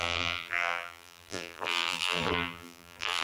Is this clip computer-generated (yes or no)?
yes